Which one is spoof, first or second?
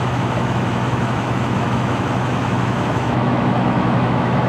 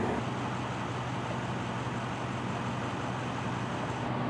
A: first